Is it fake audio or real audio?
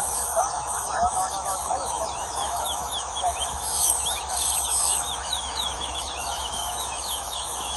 fake